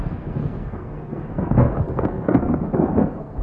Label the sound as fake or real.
fake